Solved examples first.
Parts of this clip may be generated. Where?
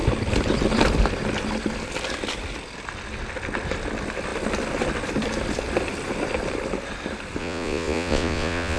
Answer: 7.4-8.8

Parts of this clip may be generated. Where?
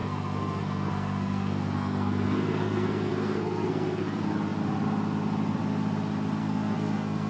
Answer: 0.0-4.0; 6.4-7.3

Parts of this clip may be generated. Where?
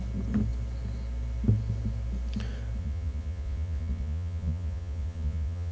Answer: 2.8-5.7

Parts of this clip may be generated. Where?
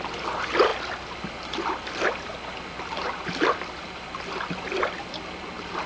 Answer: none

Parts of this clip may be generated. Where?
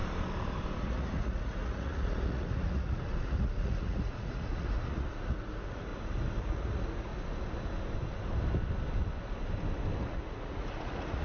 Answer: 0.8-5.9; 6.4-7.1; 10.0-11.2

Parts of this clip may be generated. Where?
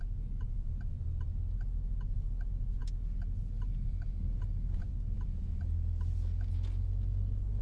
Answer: none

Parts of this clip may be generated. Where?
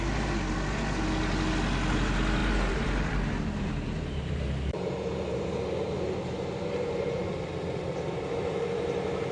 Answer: 2.4-7.3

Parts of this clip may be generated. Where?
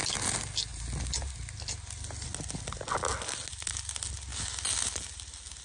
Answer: none